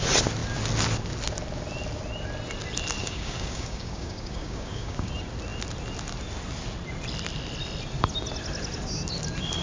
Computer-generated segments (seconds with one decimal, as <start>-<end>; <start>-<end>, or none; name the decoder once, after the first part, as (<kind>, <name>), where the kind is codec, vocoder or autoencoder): 3.0-5.1 (codec, DAC)